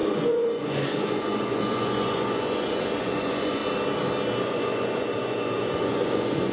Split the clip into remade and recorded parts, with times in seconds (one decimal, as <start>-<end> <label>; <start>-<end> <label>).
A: 0.0-3.6 remade; 3.6-4.4 recorded; 4.4-6.5 remade